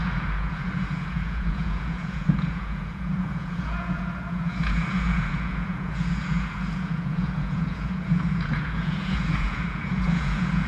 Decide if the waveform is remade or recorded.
remade